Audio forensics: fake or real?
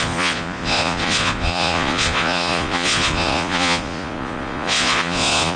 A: fake